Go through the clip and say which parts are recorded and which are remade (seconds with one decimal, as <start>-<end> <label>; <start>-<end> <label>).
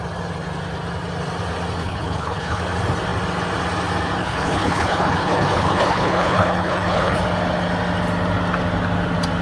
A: 0.0-1.8 recorded; 1.8-2.6 remade; 2.6-4.2 recorded; 4.2-7.2 remade; 7.2-9.4 recorded